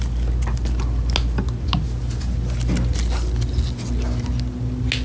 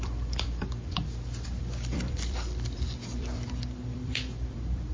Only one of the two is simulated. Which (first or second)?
second